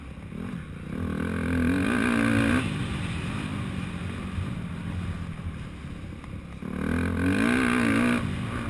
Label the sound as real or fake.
real